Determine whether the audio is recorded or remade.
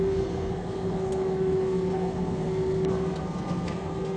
remade